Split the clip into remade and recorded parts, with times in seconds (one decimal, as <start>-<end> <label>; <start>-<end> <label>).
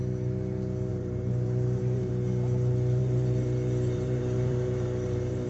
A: 0.0-0.9 recorded; 0.9-2.1 remade; 2.1-3.0 recorded; 3.0-5.5 remade